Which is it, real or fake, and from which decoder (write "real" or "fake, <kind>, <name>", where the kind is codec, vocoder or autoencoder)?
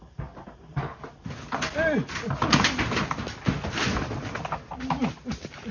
real